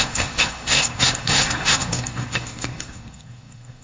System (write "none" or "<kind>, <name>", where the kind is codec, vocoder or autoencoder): codec, SNAC